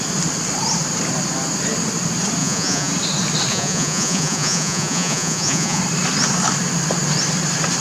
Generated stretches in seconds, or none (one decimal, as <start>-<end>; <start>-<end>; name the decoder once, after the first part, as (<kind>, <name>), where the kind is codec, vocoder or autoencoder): 2.4-2.9 (vocoder, Vocos); 3.5-5.8